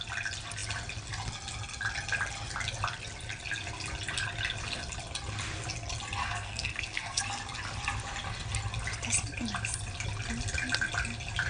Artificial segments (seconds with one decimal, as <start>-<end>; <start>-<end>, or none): 6.2-7.2